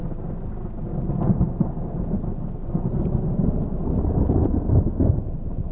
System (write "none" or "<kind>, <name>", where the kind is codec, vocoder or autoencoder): none